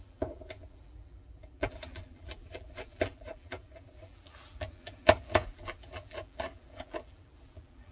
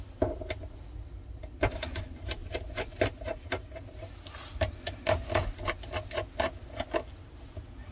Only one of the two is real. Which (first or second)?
second